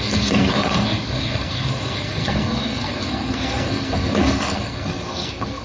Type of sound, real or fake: fake